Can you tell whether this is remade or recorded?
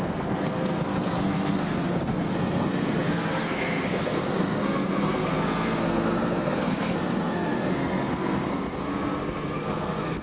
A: remade